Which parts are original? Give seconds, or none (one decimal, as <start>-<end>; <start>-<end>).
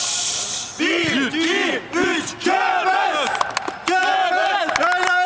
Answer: 0.0-5.3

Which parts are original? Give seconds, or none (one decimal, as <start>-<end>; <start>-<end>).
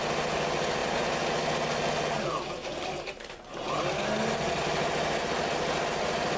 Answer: 0.0-6.4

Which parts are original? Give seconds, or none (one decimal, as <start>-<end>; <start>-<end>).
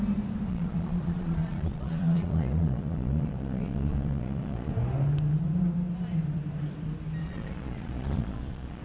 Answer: 0.0-0.5; 4.7-7.2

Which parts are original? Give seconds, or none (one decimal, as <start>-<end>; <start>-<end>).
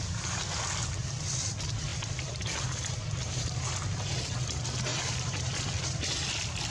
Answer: 0.0-1.9; 4.0-4.9; 5.8-6.7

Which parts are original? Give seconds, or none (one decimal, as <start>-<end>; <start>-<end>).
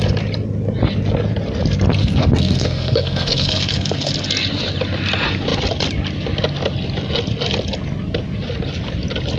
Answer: 0.0-2.0; 4.1-9.4